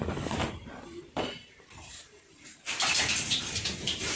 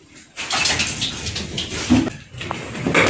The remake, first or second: first